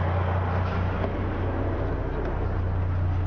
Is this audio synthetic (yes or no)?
no